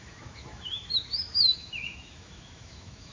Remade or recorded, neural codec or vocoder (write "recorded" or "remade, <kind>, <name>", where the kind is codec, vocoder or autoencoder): remade, autoencoder, DAC-VAE